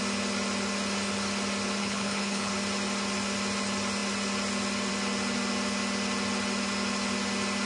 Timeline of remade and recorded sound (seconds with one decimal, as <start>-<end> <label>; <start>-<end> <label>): 0.0-1.8 recorded; 1.8-2.5 remade; 2.5-7.7 recorded